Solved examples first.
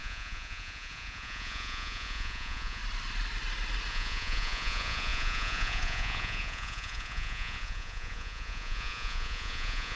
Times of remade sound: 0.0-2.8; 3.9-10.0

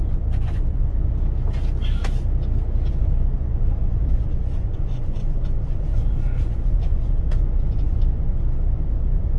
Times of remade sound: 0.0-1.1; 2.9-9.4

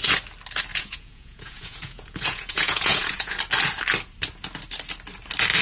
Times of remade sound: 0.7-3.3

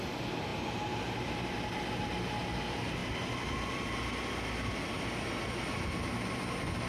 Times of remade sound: none

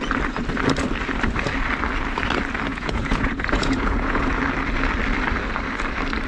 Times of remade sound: 2.7-4.2

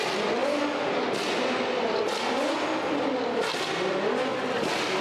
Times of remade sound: none